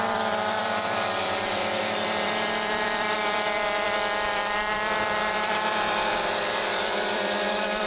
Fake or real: fake